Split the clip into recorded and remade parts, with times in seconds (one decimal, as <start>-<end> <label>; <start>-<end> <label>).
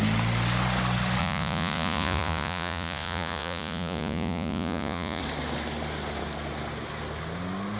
0.0-1.2 recorded; 1.2-5.2 remade; 5.2-7.8 recorded